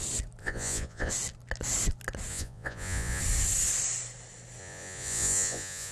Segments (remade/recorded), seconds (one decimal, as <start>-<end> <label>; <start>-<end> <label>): 0.0-0.4 recorded; 0.4-1.1 remade; 1.1-2.3 recorded; 2.3-3.2 remade; 3.2-4.6 recorded; 4.6-5.9 remade